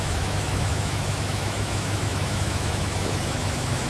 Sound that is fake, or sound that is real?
fake